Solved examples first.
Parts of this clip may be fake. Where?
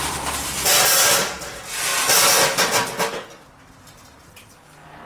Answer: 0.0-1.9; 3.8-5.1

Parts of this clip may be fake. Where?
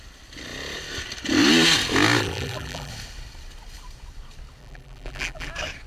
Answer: 2.2-2.9; 4.6-5.5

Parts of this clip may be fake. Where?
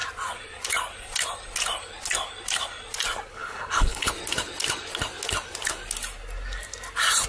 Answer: 3.3-4.1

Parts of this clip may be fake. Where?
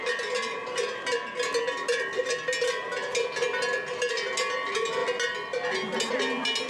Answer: none